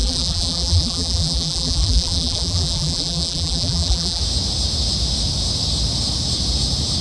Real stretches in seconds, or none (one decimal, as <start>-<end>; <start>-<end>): 4.2-7.0